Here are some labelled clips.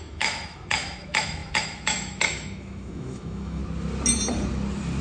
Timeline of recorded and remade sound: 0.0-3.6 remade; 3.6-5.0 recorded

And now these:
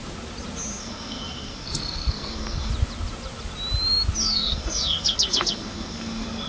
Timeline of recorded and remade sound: 0.0-0.8 recorded; 0.8-2.7 remade; 2.7-4.2 recorded; 4.2-6.5 remade

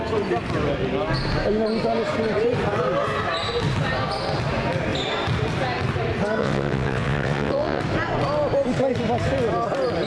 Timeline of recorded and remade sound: 0.0-6.4 recorded; 6.4-7.8 remade; 7.8-10.1 recorded

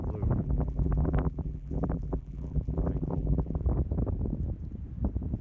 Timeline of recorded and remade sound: 0.0-0.4 recorded; 0.4-3.6 remade; 3.6-5.4 recorded

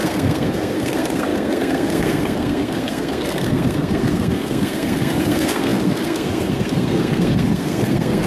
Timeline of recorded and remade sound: 0.0-8.3 remade

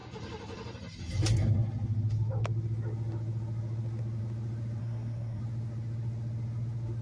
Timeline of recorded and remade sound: 0.0-4.8 recorded; 4.8-5.4 remade; 5.4-7.0 recorded

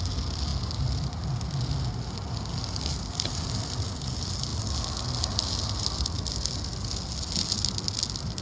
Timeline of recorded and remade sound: 0.0-8.4 recorded